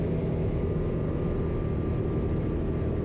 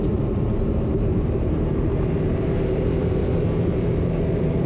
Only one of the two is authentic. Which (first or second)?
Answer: first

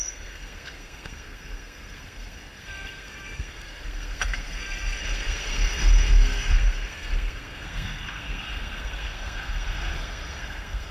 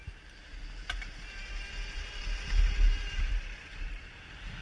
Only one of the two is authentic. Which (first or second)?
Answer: second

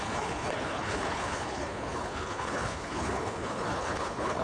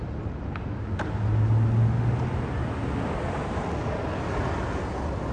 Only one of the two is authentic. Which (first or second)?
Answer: second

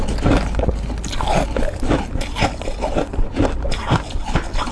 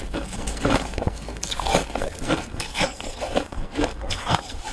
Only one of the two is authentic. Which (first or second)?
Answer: first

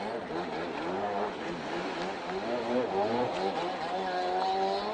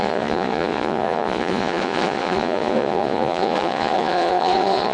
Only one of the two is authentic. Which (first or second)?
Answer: first